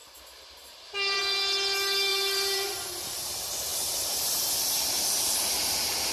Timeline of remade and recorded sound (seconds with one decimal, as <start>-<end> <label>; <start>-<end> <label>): 0.0-1.2 remade; 1.2-2.1 recorded; 2.1-2.9 remade; 2.9-3.7 recorded; 3.7-6.1 remade